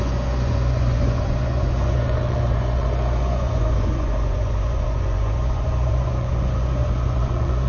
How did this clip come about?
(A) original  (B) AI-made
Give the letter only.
B